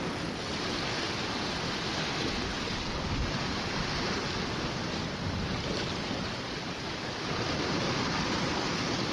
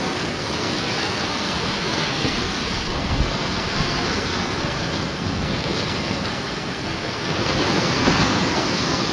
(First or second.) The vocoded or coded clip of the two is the second